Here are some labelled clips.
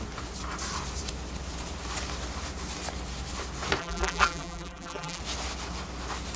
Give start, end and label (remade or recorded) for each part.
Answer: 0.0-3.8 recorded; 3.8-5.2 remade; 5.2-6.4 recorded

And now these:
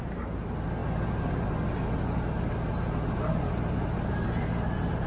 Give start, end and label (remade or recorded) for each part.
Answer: 0.0-5.1 recorded

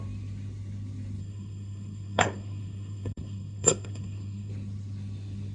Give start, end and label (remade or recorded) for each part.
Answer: 0.0-1.2 recorded; 1.2-4.5 remade; 4.5-5.5 recorded

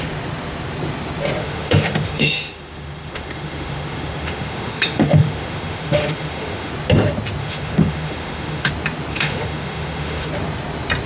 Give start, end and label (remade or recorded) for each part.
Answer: 0.0-1.4 recorded; 1.4-6.7 remade; 6.7-7.4 recorded; 7.4-8.7 remade; 8.7-9.1 recorded; 9.1-10.3 remade; 10.3-11.1 recorded

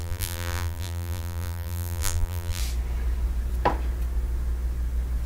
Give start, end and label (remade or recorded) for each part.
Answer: 0.0-2.6 remade; 2.6-5.3 recorded

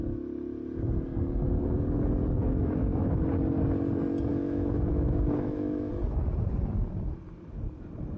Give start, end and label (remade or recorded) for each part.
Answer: 0.0-2.4 recorded; 2.4-3.2 remade; 3.2-4.3 recorded; 4.3-5.9 remade; 5.9-8.2 recorded